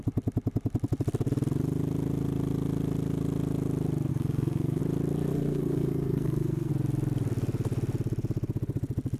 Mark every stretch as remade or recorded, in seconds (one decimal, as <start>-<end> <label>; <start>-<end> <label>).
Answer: 0.0-4.1 recorded; 4.1-4.8 remade; 4.8-5.3 recorded; 5.3-6.7 remade; 6.7-9.2 recorded